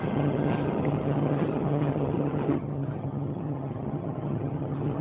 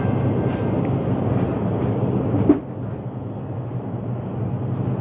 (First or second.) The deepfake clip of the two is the first